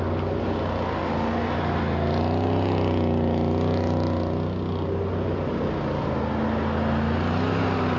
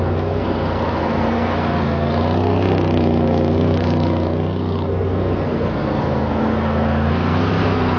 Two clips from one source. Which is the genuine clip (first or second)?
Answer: first